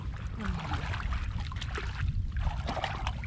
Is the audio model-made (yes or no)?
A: no